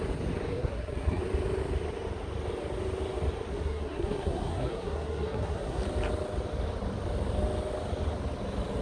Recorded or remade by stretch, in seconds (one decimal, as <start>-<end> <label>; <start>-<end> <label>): 0.0-0.5 recorded; 0.5-1.2 remade; 1.2-3.5 recorded; 3.5-5.8 remade; 5.8-8.8 recorded